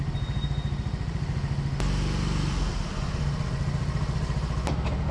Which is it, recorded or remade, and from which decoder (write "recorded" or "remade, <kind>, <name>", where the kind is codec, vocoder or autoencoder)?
recorded